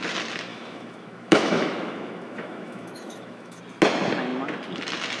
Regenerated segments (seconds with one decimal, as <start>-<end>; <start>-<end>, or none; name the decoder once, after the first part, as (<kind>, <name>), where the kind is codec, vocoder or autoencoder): 0.5-3.6 (autoencoder, DAC-VAE)